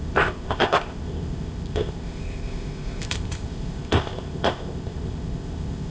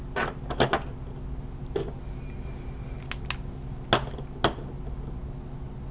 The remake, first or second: first